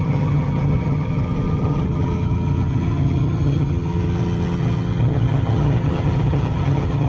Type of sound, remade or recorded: remade